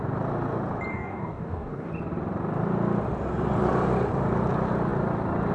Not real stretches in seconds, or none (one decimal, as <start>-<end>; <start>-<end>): 0.9-1.9